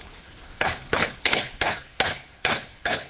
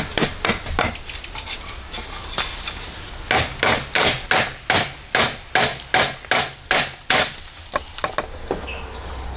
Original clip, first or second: second